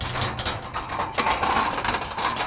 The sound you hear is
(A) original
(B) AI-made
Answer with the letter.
A